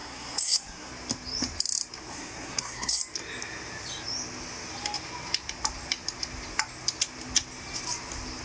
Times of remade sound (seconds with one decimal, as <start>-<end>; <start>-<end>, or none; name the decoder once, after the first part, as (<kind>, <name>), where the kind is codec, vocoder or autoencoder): 0.0-0.9 (codec, SNAC); 2.1-3.0

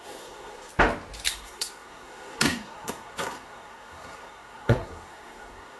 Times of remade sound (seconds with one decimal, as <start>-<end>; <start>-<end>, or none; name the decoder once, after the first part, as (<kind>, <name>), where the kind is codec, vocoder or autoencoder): 0.0-0.7 (codec, SNAC); 1.3-5.8